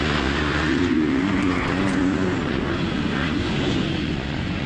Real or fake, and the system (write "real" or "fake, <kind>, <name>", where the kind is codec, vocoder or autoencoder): fake, vocoder, Vocos